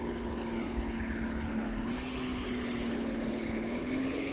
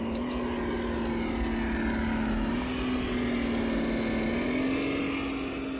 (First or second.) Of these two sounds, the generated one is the first